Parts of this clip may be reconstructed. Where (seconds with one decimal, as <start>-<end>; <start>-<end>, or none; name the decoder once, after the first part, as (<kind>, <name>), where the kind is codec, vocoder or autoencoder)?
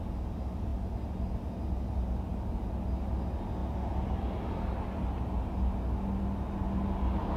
none